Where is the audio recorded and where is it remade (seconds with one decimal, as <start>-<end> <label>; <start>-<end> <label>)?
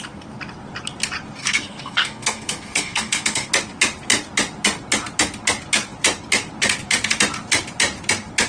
0.0-1.4 recorded; 1.4-3.5 remade; 3.5-8.5 recorded